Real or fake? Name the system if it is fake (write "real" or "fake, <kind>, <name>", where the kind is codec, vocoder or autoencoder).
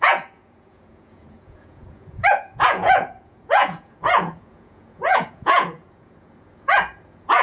fake, vocoder, Vocos